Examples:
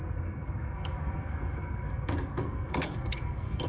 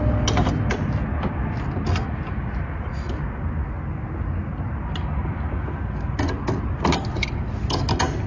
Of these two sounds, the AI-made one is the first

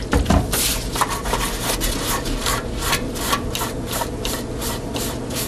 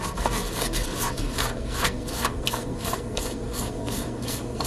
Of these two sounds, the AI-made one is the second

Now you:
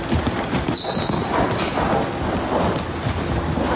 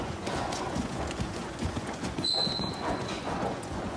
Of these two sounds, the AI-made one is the second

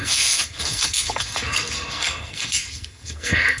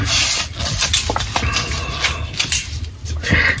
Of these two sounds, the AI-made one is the first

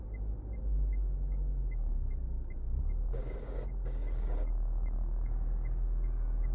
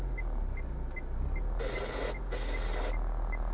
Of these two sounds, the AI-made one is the first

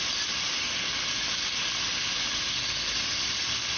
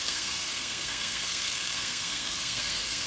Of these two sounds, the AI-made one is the second